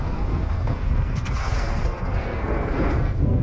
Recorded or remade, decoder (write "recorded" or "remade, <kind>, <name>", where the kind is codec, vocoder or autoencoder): remade, codec, SNAC